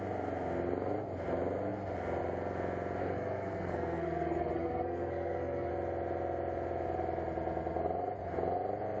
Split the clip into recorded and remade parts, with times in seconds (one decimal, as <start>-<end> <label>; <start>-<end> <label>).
0.0-3.0 recorded; 3.0-5.7 remade; 5.7-9.0 recorded